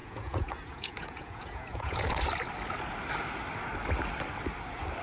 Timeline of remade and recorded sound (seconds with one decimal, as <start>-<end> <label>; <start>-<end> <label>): 0.0-2.2 remade; 2.2-5.0 recorded